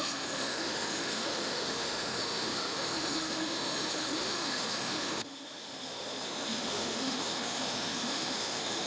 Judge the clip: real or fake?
fake